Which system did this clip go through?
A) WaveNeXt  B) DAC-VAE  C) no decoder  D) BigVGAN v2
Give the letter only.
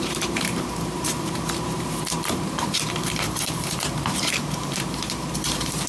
D